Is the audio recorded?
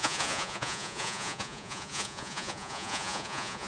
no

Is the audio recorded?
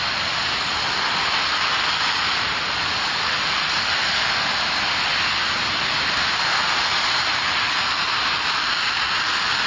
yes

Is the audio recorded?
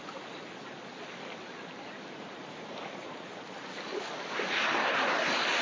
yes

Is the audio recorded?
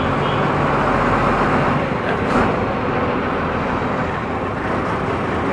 yes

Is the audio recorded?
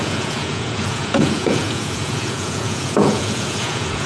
no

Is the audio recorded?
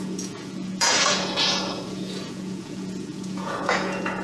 no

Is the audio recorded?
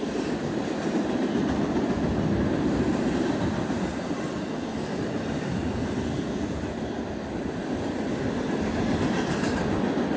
yes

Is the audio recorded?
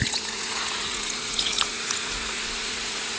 no